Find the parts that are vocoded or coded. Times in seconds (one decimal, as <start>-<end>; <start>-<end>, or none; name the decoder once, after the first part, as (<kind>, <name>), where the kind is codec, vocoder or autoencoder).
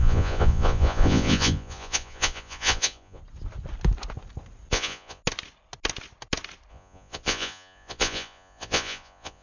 0.0-3.2 (vocoder, Vocos); 4.7-5.2; 6.7-9.4